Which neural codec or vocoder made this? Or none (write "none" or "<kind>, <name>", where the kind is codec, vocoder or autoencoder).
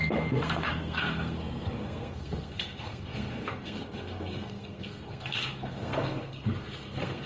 codec, SNAC